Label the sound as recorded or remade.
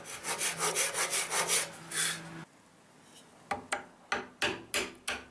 recorded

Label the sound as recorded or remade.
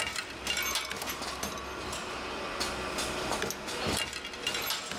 recorded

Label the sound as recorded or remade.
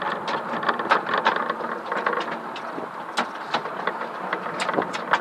recorded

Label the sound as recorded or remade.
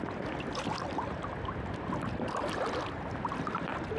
recorded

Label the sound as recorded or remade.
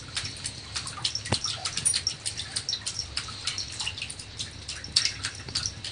recorded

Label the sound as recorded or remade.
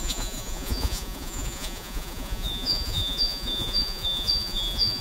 remade